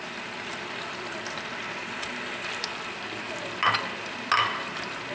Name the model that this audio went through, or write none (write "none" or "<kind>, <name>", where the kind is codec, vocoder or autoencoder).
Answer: none